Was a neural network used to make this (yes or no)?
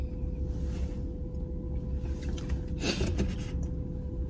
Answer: no